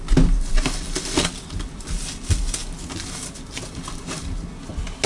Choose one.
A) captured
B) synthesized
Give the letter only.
A